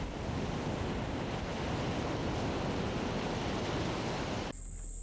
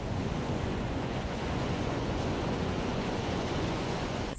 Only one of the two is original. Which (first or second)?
first